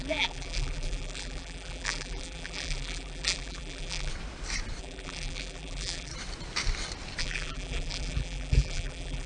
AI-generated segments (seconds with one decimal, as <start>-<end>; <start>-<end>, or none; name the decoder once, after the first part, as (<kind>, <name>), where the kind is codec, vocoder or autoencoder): 0.0-4.1 (vocoder, BigVGAN v2); 4.8-6.1; 7.2-9.3

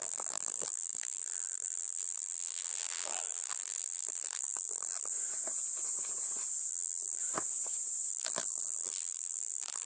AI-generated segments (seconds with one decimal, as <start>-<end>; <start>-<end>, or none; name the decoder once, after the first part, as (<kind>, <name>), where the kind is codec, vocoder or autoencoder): 0.0-5.1 (vocoder, BigVGAN v2); 6.7-7.2; 8.1-9.9